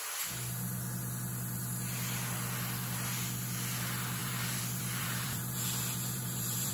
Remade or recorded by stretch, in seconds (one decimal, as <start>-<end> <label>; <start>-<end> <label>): 0.0-4.2 recorded; 4.2-6.7 remade